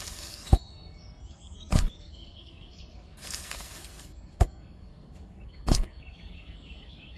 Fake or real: fake